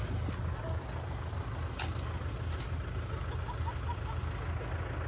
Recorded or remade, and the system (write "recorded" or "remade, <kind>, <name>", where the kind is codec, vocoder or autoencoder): recorded